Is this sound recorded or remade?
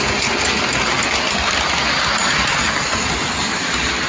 recorded